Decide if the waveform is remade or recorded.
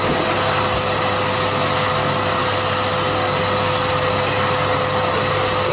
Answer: recorded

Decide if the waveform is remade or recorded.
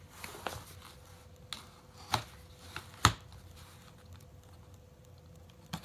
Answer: recorded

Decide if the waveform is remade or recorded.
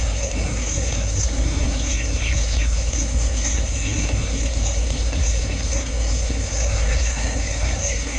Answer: remade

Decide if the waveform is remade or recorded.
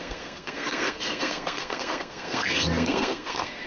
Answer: remade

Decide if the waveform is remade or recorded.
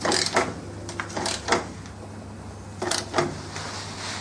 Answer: recorded